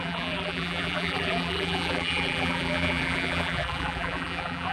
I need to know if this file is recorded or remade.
remade